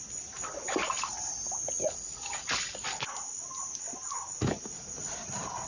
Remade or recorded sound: recorded